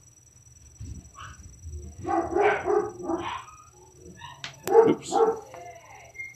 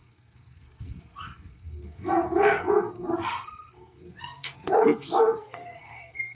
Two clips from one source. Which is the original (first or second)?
first